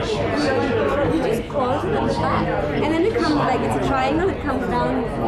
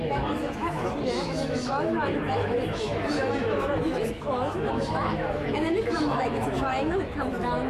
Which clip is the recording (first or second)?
first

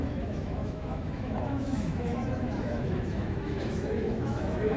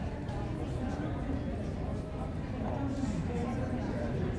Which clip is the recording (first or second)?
second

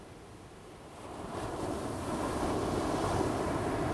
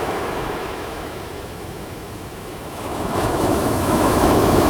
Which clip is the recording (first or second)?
first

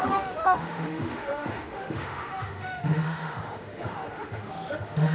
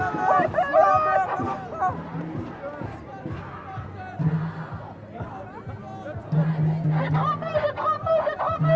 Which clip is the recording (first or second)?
second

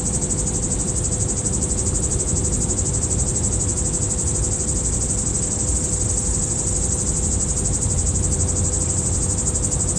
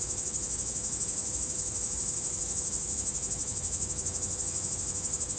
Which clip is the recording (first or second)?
first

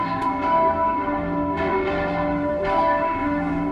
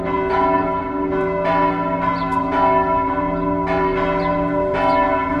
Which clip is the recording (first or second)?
second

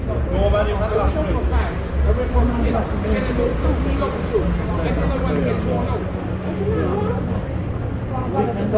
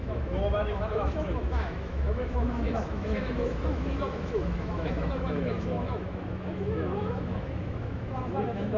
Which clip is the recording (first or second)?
first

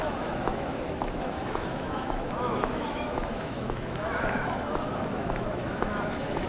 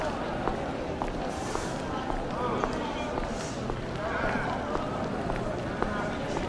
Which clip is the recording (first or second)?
second